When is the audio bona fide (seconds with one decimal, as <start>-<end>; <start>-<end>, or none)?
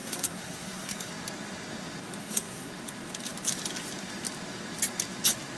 1.1-2.2; 2.7-5.6